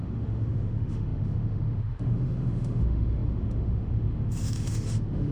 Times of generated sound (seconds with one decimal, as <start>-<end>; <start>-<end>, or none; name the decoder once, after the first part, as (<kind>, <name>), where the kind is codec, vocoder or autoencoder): 0.0-5.3 (autoencoder, DAC-VAE)

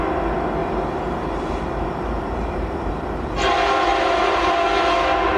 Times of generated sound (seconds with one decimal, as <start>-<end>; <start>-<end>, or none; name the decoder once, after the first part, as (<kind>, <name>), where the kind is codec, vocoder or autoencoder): 0.6-2.9 (vocoder, BigVGAN v2); 3.9-4.4

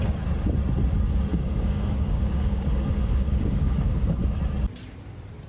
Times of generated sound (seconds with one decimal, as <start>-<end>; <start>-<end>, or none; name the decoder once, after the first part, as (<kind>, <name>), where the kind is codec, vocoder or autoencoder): 1.3-4.2 (codec, DAC)

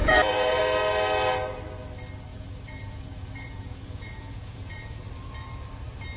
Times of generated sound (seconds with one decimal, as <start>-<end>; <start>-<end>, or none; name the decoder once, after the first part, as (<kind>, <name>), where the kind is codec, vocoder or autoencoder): 0.0-0.6 (vocoder, Vocos); 2.3-5.0

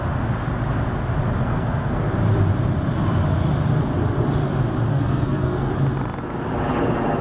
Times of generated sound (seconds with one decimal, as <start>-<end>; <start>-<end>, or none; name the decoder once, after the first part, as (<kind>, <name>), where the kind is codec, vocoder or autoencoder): 1.4-2.0 (codec, SNAC); 4.9-5.7